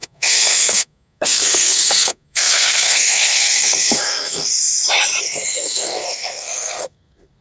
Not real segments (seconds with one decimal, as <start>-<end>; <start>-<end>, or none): 0.0-4.6; 5.2-7.4